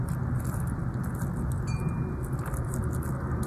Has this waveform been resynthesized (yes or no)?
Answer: no